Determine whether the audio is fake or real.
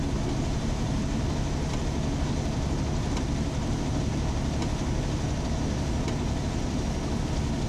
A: real